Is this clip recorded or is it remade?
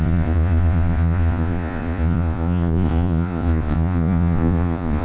remade